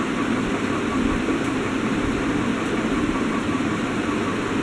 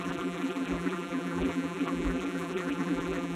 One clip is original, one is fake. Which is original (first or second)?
first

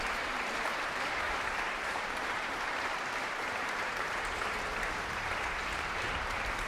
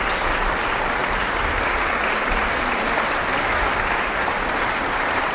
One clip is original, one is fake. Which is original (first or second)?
second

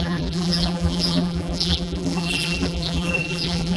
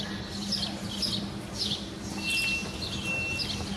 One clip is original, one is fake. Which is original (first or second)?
second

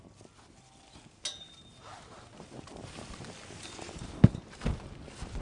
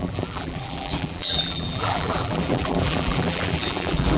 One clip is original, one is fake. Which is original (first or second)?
first